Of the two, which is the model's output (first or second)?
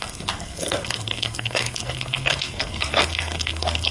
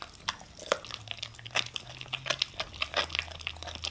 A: first